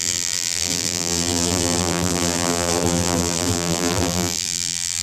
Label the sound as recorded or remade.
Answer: remade